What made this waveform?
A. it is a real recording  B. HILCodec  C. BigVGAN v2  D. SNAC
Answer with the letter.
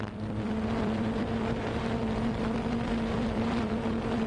C